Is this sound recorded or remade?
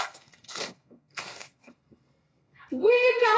remade